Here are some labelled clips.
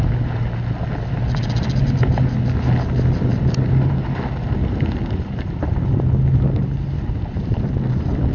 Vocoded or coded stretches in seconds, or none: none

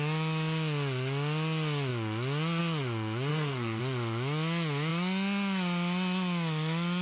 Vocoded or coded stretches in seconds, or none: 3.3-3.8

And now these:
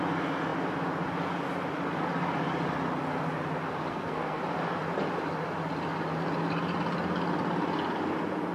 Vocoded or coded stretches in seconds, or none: 3.9-4.4